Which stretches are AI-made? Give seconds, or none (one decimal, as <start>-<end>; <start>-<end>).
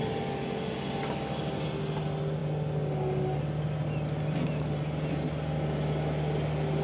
none